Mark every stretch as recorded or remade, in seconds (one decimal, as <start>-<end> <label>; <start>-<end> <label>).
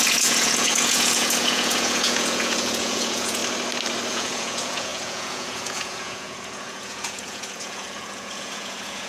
0.0-3.4 remade; 3.4-4.1 recorded; 4.1-9.1 remade